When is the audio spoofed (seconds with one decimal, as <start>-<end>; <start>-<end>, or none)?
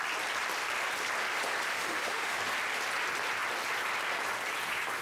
1.7-2.4